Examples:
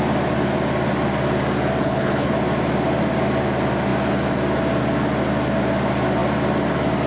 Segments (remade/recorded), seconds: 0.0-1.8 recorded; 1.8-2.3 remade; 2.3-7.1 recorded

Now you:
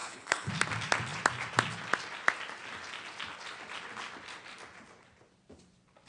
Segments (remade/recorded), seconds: 0.0-0.5 remade; 0.5-6.1 recorded

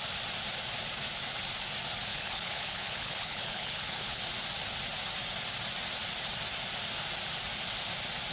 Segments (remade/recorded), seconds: 0.0-2.1 recorded; 2.1-4.2 remade; 4.2-8.3 recorded

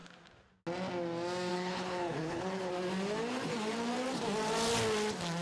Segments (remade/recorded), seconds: 0.0-1.5 recorded; 1.5-2.7 remade; 2.7-5.4 recorded

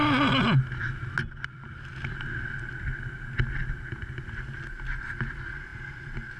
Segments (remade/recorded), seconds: 0.0-6.4 recorded